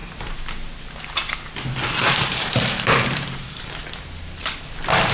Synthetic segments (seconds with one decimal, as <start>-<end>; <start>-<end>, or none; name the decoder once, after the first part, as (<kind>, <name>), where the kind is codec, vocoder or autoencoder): 2.0-3.6 (vocoder, BigVGAN v2)